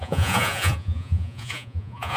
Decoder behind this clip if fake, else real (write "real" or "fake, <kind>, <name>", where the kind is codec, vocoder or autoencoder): fake, vocoder, Vocos